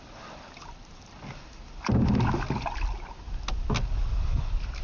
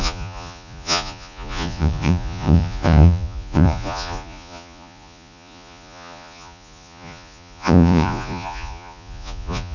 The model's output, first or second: second